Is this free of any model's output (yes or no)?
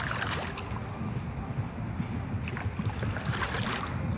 yes